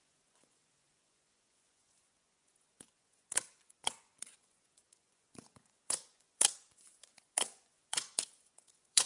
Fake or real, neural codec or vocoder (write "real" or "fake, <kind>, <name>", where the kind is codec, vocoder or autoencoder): fake, vocoder, Vocos